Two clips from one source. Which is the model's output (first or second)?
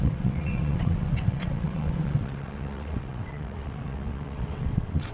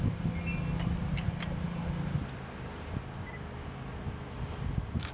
first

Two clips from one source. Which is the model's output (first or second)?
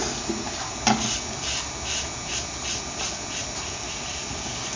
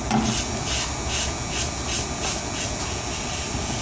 first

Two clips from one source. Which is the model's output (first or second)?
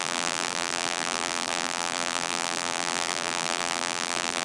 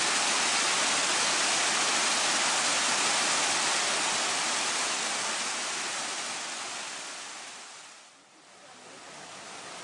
first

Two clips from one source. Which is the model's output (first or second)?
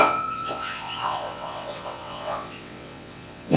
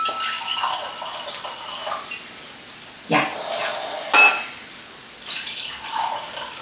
first